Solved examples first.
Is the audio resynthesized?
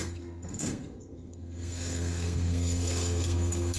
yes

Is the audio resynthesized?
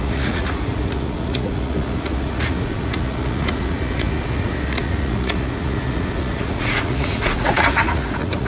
yes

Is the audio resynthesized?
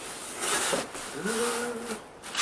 no